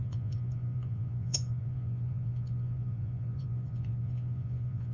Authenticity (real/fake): fake